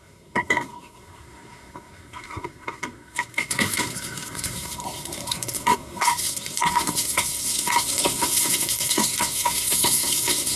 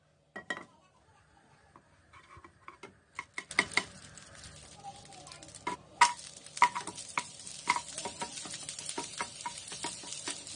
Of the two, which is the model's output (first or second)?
first